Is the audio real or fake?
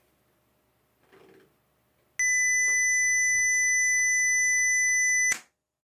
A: real